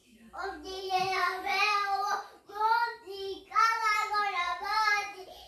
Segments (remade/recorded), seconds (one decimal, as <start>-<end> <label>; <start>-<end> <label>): 0.0-5.5 recorded